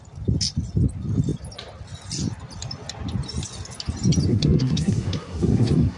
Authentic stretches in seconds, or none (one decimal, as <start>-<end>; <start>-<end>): 0.0-4.3

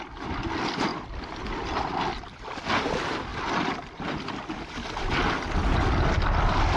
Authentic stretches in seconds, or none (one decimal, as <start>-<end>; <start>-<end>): 0.0-6.8